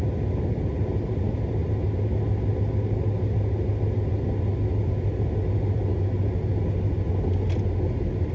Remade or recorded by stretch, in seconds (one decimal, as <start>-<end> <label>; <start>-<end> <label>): 0.0-8.3 recorded